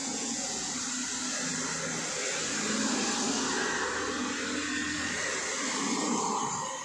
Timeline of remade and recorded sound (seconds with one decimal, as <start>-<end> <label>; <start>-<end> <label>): 0.0-0.7 remade; 0.7-6.8 recorded

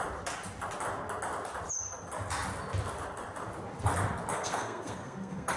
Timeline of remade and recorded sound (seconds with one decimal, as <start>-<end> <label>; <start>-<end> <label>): 0.0-4.3 recorded; 4.3-5.6 remade

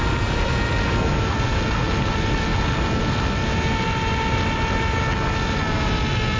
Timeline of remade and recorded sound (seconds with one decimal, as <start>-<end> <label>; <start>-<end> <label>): 0.0-6.4 recorded

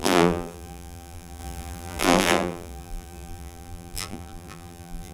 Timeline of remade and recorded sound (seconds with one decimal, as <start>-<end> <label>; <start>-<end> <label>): 0.0-5.1 remade

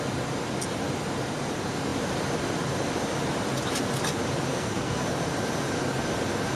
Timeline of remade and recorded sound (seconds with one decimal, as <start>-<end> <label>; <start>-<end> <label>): 0.0-4.5 recorded; 4.5-5.0 remade; 5.0-6.6 recorded

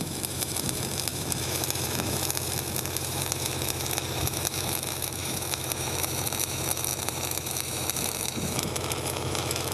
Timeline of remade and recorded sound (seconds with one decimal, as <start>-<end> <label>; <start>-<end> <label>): 0.0-9.7 remade

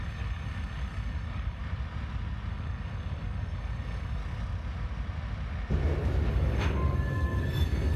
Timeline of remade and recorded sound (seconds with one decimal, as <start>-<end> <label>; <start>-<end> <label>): 0.0-1.6 remade; 1.6-2.5 recorded; 2.5-4.2 remade; 4.2-6.3 recorded; 6.3-8.0 remade